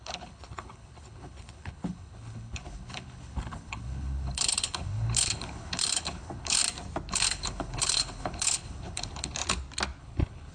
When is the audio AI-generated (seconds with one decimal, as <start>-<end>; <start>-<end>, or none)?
0.0-6.6; 7.1-9.4; 10.0-10.5